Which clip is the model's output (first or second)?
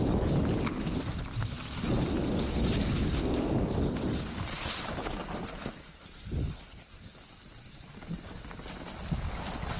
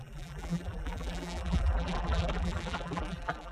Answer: second